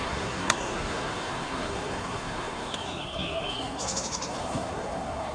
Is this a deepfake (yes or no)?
yes